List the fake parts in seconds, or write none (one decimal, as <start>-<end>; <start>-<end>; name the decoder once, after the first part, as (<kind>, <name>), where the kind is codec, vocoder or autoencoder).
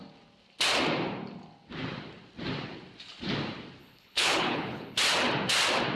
3.8-5.0 (codec, HILCodec)